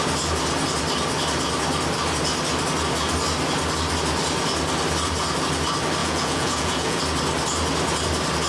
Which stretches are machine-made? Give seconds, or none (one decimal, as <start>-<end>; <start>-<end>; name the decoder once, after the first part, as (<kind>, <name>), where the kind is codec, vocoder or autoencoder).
6.0-7.0 (vocoder, Vocos)